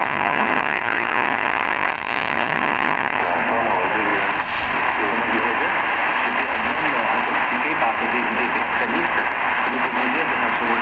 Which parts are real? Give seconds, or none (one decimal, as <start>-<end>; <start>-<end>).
3.2-10.8